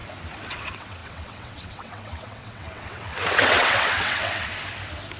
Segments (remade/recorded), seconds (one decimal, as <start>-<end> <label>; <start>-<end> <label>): 0.0-0.5 recorded; 0.5-4.5 remade; 4.5-5.2 recorded